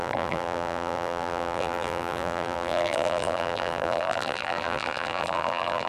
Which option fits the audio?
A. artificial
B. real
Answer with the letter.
A